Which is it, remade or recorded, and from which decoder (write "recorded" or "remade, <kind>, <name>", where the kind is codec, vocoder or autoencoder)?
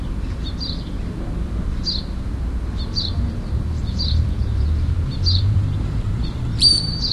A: remade, vocoder, BigVGAN v2